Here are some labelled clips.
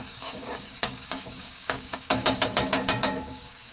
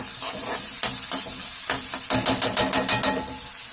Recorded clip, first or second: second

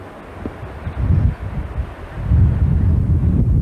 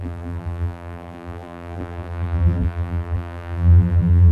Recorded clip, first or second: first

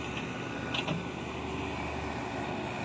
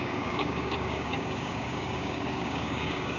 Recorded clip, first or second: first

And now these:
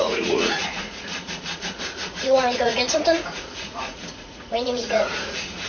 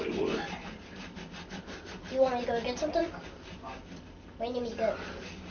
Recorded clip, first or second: second